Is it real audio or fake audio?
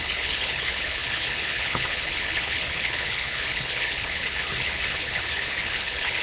fake